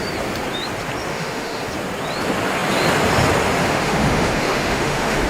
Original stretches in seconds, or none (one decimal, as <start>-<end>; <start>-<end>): 0.0-1.1; 1.7-3.6